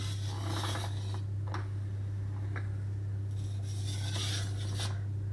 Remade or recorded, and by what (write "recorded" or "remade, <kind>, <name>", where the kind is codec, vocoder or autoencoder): recorded